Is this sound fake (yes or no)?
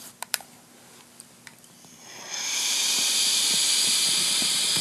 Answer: yes